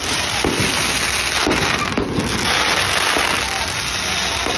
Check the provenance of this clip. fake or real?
real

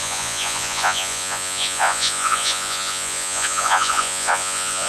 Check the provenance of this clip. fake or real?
fake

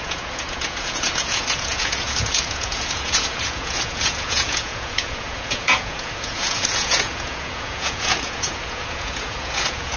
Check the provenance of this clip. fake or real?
fake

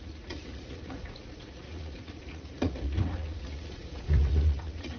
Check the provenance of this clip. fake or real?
fake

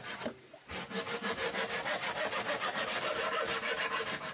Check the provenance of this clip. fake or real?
real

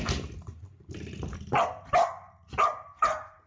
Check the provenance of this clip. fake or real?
real